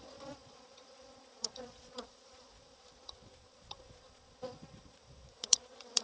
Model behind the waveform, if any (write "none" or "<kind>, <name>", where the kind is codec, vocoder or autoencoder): vocoder, Vocos